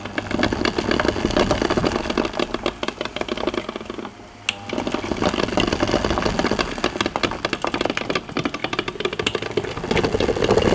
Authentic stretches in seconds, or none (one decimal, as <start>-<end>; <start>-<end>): 0.0-10.7